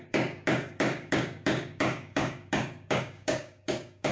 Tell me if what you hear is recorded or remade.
remade